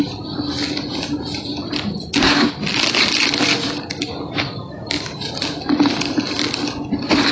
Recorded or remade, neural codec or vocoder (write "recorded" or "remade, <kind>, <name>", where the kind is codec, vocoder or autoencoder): recorded